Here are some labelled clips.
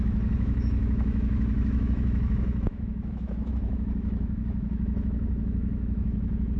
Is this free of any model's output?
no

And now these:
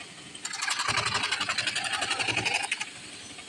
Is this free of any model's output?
yes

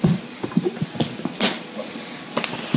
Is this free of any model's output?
yes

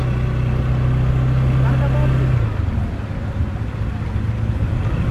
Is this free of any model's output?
yes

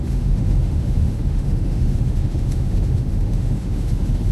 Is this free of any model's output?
no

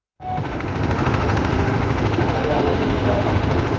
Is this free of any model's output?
no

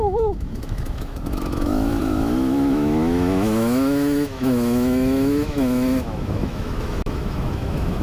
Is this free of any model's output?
no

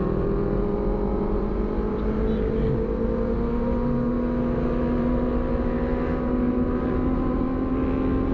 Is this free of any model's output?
yes